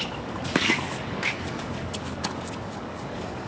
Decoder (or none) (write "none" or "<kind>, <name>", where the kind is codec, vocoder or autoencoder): codec, DAC